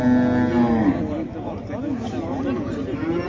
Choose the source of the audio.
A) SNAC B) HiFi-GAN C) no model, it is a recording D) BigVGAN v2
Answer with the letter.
C